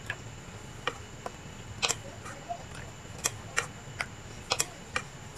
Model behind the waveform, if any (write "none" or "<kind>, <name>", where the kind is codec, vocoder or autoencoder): none